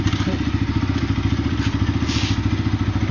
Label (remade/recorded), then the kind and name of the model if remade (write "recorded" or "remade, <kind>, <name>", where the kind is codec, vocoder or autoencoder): recorded